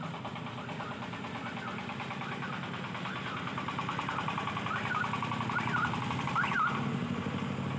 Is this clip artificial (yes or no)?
no